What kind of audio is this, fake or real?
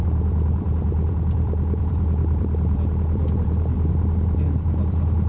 fake